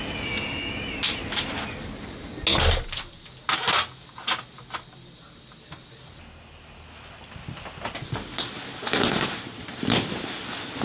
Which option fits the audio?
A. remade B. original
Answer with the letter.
B